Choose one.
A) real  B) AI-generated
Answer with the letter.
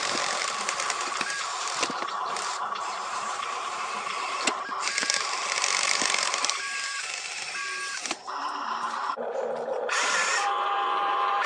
B